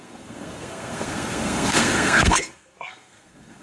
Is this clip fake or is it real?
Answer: fake